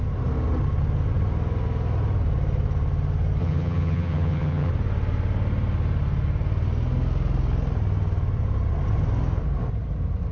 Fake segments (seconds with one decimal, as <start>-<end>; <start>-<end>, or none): 3.4-4.7